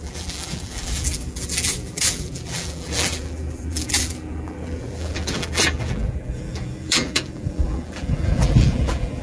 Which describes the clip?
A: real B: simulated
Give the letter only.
B